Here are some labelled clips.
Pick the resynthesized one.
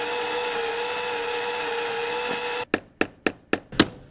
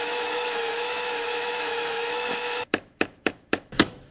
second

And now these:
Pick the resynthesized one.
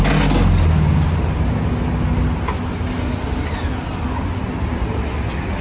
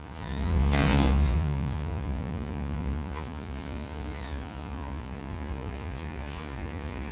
second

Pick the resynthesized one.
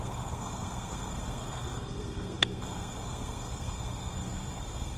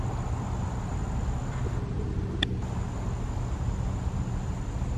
first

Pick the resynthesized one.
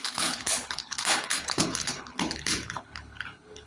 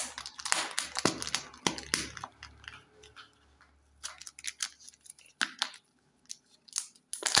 first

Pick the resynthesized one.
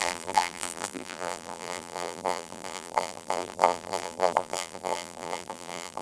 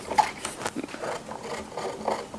first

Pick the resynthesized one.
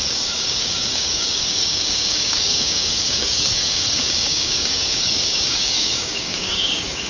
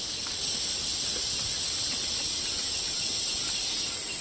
first